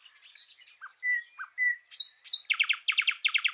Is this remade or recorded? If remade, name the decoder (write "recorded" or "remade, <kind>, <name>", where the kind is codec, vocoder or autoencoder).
recorded